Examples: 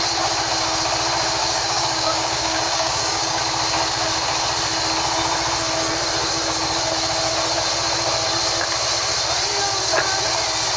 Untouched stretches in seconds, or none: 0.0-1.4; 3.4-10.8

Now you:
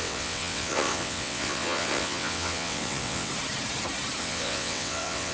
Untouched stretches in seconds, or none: 3.3-4.2